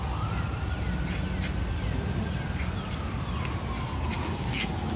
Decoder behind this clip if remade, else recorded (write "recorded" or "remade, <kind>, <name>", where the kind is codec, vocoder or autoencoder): recorded